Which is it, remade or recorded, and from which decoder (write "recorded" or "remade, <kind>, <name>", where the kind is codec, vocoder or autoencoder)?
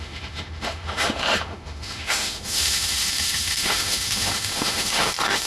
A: remade, autoencoder, DAC-VAE